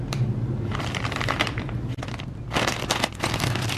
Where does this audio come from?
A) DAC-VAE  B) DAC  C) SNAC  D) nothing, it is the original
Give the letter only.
D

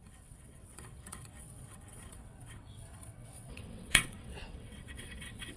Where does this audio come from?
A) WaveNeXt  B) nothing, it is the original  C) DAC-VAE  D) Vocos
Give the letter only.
A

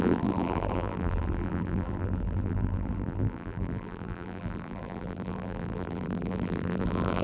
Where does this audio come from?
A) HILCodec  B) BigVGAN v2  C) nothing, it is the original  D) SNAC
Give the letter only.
B